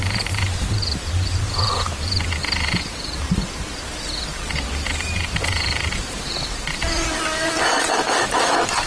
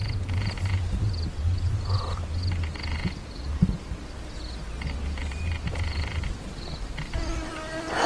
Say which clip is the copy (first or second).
first